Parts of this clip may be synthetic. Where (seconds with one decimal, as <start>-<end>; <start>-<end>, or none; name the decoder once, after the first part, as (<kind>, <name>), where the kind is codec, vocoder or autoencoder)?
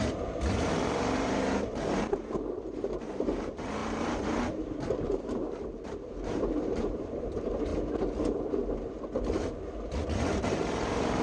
0.0-7.7 (vocoder, BigVGAN v2); 10.4-11.2